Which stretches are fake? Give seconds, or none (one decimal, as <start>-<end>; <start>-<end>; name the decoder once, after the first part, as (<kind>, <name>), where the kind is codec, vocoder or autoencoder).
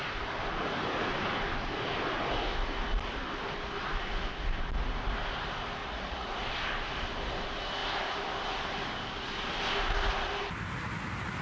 5.8-6.3 (vocoder, Vocos)